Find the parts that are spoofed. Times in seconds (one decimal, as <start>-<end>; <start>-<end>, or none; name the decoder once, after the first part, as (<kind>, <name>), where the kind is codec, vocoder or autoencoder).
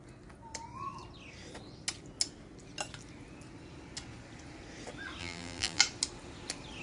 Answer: 5.2-5.8 (vocoder, BigVGAN v2)